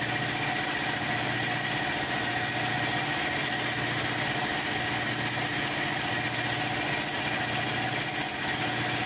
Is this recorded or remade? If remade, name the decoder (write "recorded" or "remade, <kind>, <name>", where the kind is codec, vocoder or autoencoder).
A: recorded